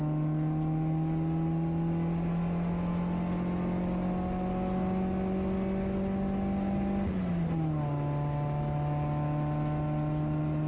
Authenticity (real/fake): real